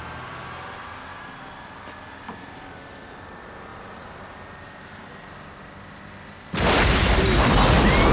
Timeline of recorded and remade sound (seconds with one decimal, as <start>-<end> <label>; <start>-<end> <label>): 0.0-8.1 recorded